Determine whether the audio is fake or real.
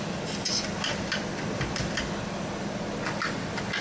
real